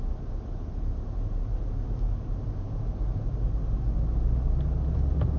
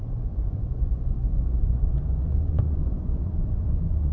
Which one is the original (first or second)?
first